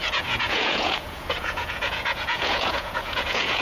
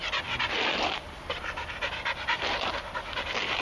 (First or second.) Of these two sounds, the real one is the second